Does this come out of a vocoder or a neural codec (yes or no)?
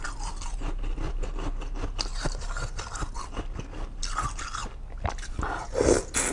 no